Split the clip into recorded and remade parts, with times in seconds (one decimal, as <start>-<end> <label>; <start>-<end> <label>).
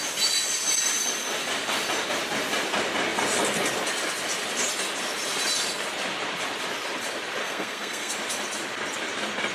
0.0-7.4 recorded; 7.4-8.1 remade; 8.1-9.5 recorded